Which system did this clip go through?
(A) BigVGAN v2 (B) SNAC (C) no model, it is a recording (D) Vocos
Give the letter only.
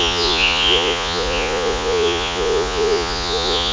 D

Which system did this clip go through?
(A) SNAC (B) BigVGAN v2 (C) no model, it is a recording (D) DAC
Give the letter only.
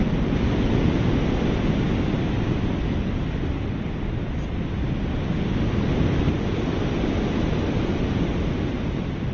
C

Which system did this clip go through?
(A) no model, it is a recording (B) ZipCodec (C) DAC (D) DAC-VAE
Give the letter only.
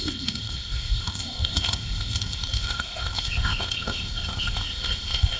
B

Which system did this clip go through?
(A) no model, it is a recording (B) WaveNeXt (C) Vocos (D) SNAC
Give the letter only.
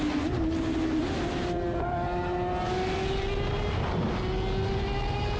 A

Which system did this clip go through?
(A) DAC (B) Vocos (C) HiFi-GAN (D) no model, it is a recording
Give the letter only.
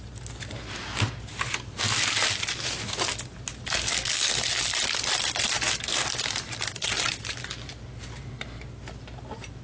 D